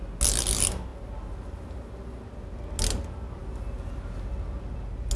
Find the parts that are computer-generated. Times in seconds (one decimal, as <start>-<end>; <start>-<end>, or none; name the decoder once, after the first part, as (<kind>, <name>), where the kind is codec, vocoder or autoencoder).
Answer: none